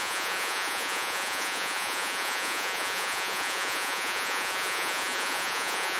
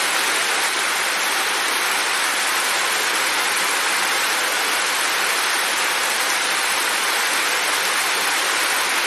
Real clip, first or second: second